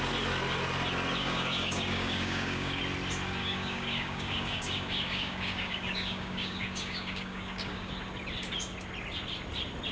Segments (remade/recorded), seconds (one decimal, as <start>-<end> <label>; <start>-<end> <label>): 0.0-1.2 recorded; 1.2-2.8 remade; 2.8-3.4 recorded; 3.4-7.9 remade; 7.9-9.9 recorded